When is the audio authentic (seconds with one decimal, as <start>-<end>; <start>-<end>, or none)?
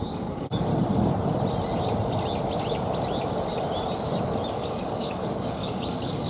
0.7-4.5